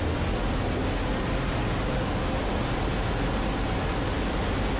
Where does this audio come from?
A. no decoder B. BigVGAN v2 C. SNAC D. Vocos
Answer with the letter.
A